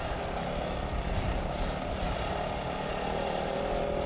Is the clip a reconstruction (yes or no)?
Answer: yes